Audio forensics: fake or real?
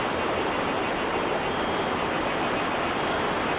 real